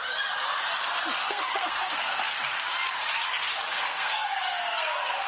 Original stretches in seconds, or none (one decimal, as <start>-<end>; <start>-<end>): 0.0-1.2; 2.4-3.7